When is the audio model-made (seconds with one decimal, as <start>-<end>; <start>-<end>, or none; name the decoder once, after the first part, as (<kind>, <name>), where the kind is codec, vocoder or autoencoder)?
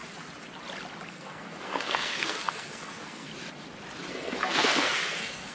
1.1-3.3 (codec, SNAC); 4.1-5.5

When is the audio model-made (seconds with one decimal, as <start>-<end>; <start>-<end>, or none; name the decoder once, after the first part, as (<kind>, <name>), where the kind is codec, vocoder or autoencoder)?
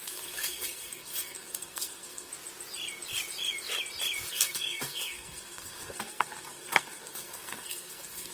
0.0-2.3 (codec, SNAC); 4.3-8.3